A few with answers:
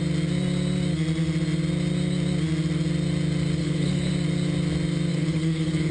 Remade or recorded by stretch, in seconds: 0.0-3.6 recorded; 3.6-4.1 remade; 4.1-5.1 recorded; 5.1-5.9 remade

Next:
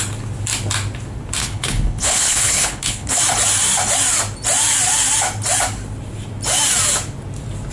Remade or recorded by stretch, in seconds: 0.0-1.4 recorded; 1.4-3.2 remade; 3.2-7.7 recorded